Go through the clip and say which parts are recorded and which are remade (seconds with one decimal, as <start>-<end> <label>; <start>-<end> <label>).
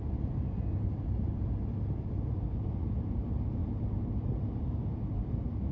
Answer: 0.0-5.7 recorded